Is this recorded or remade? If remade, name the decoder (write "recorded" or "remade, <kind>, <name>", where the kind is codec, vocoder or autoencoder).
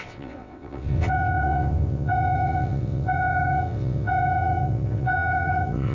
remade, vocoder, WaveNeXt